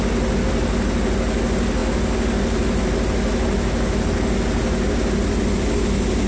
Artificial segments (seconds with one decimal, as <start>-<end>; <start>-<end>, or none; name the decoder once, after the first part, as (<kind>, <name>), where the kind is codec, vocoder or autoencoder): none